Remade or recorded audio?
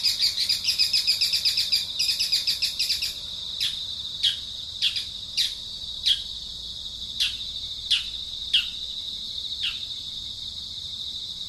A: recorded